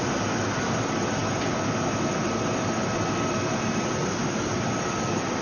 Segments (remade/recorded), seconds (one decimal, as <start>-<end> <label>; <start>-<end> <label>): 0.0-5.4 recorded